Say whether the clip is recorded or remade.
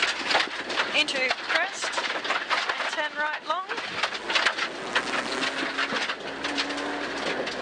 recorded